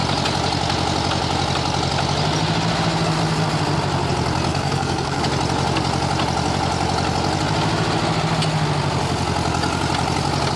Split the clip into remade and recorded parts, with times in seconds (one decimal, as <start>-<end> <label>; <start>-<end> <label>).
0.0-4.5 recorded; 4.5-5.2 remade; 5.2-10.6 recorded